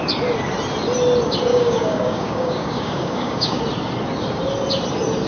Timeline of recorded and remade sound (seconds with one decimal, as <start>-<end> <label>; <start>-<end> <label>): 0.0-1.5 recorded; 1.5-3.6 remade; 3.6-5.3 recorded